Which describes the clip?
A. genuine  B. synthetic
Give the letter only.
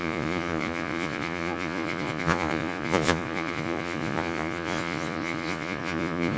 B